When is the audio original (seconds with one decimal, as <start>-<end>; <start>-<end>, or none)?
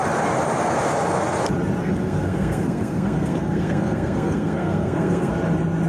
0.0-1.8; 5.3-5.9